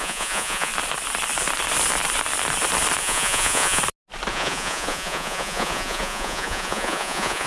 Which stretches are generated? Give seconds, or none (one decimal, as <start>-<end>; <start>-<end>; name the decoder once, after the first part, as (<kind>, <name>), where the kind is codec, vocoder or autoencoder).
0.0-0.7 (vocoder, Vocos); 3.0-3.8; 4.3-7.5